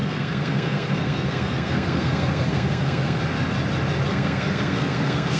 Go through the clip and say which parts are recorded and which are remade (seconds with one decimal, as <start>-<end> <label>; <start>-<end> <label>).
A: 0.0-3.2 remade; 3.2-4.1 recorded; 4.1-5.4 remade